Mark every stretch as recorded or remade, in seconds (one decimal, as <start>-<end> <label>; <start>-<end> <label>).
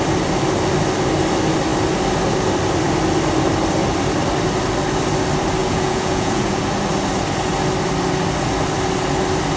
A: 0.0-5.6 recorded; 5.6-6.6 remade; 6.6-9.6 recorded